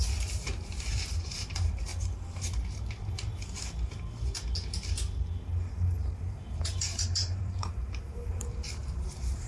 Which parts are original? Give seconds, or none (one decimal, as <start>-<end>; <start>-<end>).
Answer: 1.9-6.3